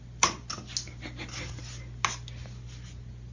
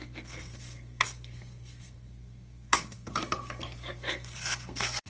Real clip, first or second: first